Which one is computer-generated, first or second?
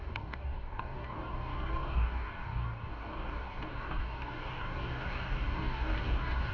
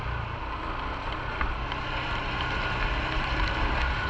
first